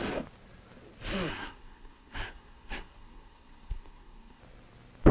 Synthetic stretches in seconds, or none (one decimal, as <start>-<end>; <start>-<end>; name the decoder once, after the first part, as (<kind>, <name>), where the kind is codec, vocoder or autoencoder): 1.3-4.4 (codec, SNAC)